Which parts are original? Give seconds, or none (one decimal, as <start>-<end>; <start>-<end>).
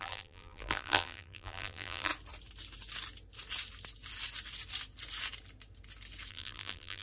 2.1-6.3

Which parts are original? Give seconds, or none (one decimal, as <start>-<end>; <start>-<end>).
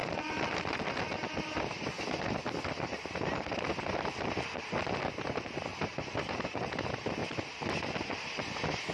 0.0-5.7; 6.5-7.2; 7.9-8.9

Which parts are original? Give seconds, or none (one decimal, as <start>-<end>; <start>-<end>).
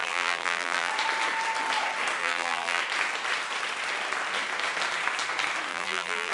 0.9-2.2; 2.8-5.7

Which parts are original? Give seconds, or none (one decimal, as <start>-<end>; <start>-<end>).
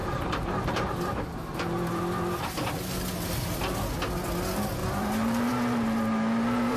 2.0-4.8; 5.5-6.8